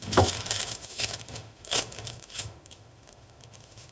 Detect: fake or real fake